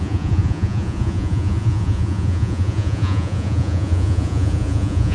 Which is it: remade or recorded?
remade